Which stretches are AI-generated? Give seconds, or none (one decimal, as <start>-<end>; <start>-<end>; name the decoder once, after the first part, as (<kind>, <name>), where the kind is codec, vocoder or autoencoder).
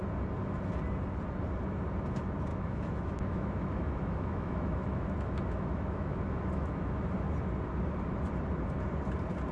2.5-6.9 (autoencoder, DAC-VAE)